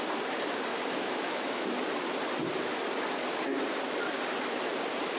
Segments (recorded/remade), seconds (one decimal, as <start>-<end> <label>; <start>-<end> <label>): 0.0-0.7 recorded; 0.7-1.7 remade; 1.7-5.2 recorded